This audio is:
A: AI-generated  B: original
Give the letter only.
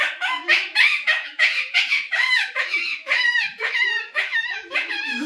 A